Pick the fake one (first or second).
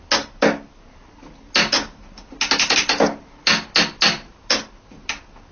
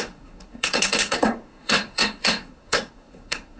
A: second